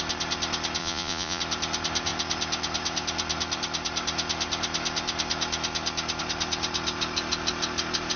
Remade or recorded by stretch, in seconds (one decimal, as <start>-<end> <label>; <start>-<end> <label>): 0.0-0.8 recorded; 0.8-1.4 remade; 1.4-8.2 recorded